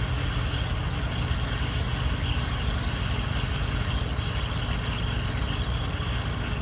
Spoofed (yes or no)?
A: no